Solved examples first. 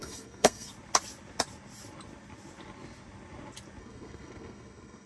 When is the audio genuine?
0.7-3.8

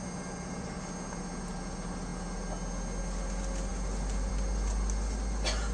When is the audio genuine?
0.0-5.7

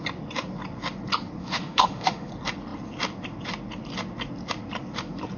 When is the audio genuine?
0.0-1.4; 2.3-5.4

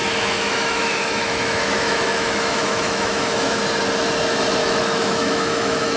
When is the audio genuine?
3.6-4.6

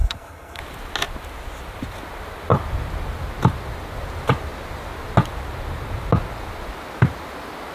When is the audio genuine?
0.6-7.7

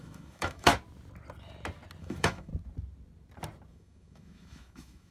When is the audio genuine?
0.7-2.0; 2.5-3.7